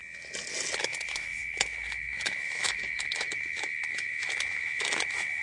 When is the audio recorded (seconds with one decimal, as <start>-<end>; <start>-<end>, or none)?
0.0-0.8